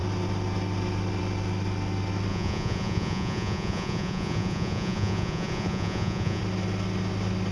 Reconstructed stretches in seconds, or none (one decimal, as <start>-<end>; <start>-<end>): 2.3-6.4